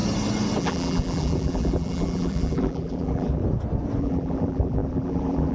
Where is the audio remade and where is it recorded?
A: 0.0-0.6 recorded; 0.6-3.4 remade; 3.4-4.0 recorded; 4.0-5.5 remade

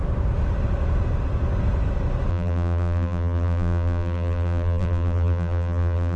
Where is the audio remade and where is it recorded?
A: 0.0-2.3 recorded; 2.3-6.2 remade

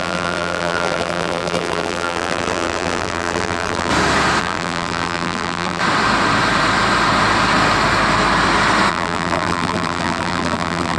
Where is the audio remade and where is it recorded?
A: 0.0-3.9 remade; 3.9-4.4 recorded; 4.4-5.8 remade; 5.8-8.9 recorded; 8.9-11.0 remade

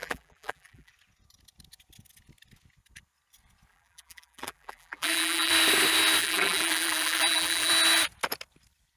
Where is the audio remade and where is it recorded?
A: 0.0-0.9 remade; 0.9-3.7 recorded; 3.7-5.5 remade; 5.5-6.2 recorded; 6.2-7.7 remade; 7.7-9.0 recorded

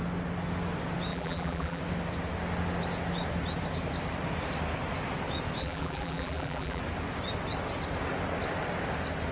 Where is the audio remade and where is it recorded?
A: 0.0-1.1 recorded; 1.1-1.8 remade; 1.8-5.6 recorded; 5.6-6.8 remade; 6.8-9.3 recorded

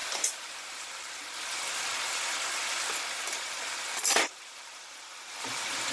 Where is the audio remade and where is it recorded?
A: 0.0-1.3 remade; 1.3-5.9 recorded